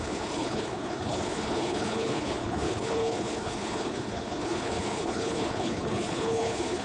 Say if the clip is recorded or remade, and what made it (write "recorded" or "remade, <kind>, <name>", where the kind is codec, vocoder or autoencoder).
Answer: remade, codec, HILCodec